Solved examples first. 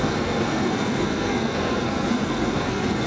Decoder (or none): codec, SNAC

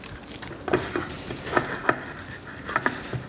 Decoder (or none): none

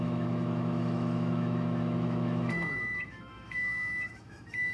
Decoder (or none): autoencoder, DAC-VAE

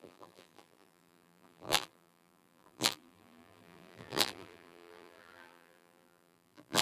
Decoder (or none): vocoder, BigVGAN v2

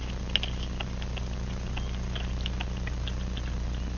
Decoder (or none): none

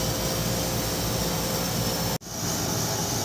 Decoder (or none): none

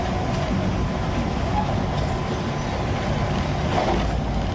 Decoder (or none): none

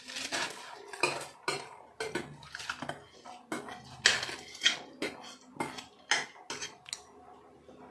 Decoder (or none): none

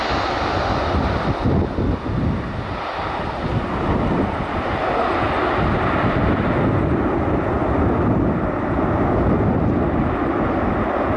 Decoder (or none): none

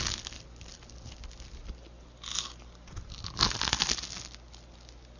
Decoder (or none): none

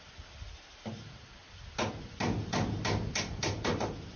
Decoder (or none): none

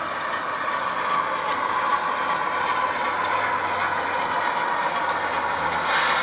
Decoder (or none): none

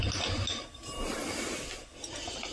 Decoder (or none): none